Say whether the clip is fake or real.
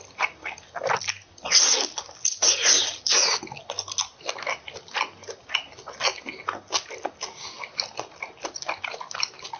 real